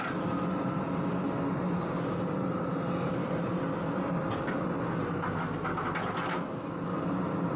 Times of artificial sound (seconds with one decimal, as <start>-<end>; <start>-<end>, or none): none